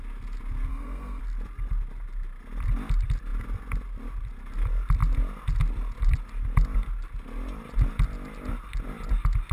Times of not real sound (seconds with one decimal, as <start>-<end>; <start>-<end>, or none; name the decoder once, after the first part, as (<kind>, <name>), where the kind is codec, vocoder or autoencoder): 0.7-1.2 (codec, SNAC)